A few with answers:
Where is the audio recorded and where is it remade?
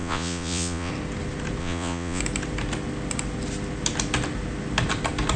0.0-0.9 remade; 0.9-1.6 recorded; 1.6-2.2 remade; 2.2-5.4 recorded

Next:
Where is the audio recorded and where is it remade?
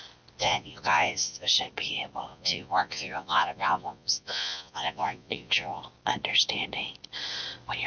0.0-0.4 recorded; 0.4-1.5 remade; 1.5-2.3 recorded; 2.3-5.8 remade; 5.8-7.9 recorded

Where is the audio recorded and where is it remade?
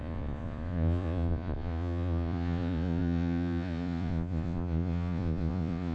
0.0-5.9 remade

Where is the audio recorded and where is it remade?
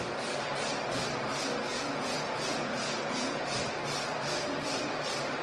0.0-1.7 recorded; 1.7-3.4 remade; 3.4-5.4 recorded